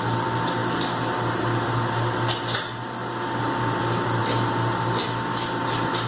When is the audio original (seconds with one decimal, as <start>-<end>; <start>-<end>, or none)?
0.0-6.1